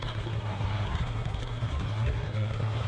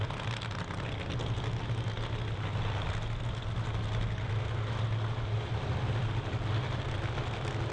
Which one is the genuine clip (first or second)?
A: second